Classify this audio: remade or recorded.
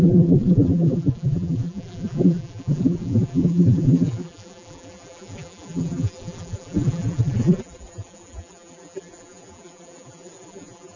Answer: remade